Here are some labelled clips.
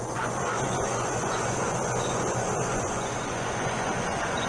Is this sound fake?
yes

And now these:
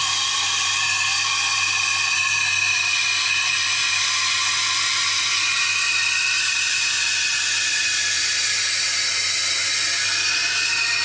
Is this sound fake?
no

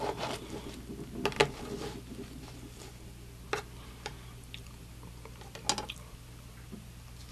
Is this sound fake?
no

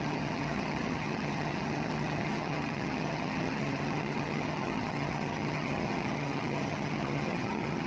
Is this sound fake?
yes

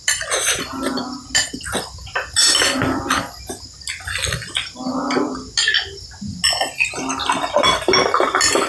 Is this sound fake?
no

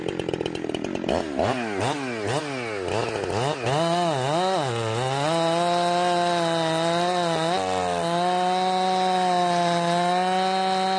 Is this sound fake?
no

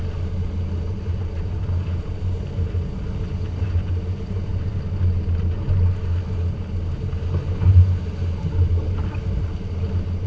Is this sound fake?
no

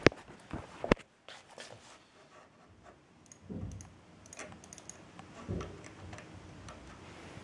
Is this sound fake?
no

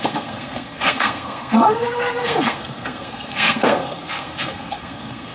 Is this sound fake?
yes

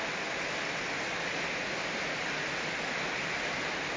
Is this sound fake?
no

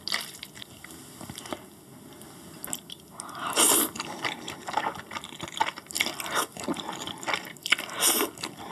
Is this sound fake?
no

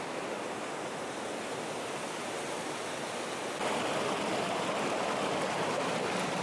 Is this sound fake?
no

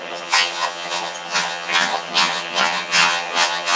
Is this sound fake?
yes